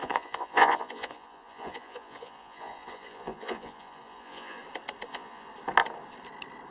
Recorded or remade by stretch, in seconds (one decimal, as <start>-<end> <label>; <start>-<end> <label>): 0.0-4.6 remade; 4.6-5.1 recorded; 5.1-5.5 remade; 5.5-6.7 recorded

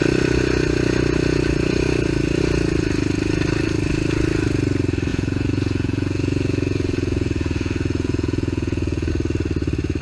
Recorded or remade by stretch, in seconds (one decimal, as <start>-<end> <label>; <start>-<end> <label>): 0.0-5.1 recorded; 5.1-9.1 remade; 9.1-10.0 recorded

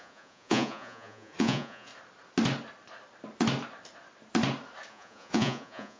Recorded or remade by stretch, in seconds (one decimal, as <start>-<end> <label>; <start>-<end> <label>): 0.0-1.9 remade; 1.9-4.9 recorded; 4.9-6.0 remade

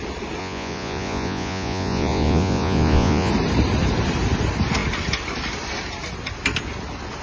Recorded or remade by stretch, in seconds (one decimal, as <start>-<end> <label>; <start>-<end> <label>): 0.0-0.4 recorded; 0.4-3.3 remade; 3.3-7.2 recorded

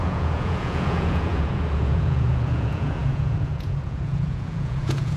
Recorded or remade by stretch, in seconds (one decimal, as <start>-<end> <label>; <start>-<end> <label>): 0.0-5.2 remade

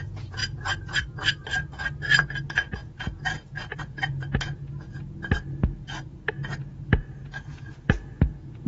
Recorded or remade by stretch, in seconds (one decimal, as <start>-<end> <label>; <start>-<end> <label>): 0.0-0.4 remade; 0.4-2.4 recorded; 2.4-8.7 remade

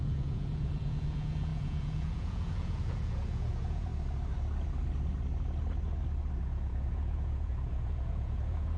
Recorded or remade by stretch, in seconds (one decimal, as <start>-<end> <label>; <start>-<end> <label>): 0.0-3.9 remade; 3.9-6.4 recorded; 6.4-8.8 remade